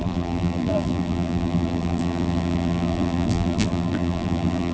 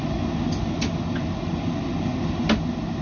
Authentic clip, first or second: second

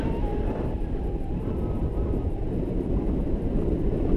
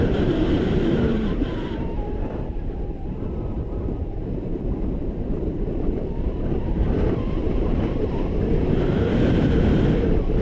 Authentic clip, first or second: first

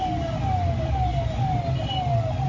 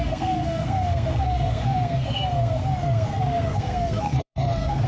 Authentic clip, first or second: first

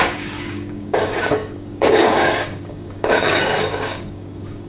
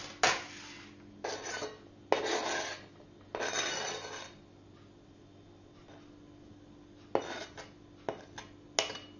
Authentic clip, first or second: second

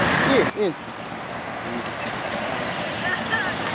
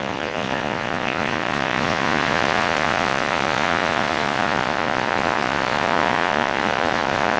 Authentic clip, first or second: first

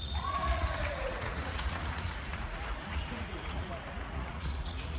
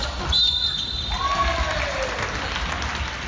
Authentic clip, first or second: second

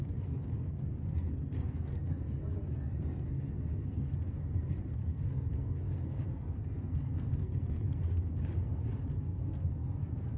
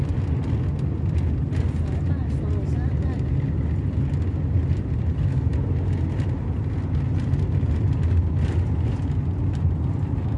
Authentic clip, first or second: second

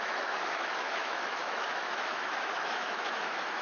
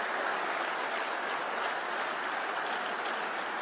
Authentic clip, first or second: second